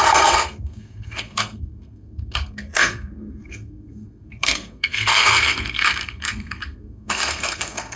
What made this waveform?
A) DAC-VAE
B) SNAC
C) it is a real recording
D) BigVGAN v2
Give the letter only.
B